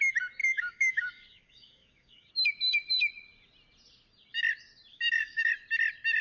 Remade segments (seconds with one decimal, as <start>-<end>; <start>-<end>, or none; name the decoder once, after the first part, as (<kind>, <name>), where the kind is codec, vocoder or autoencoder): 0.4-2.3 (codec, DAC); 4.9-5.5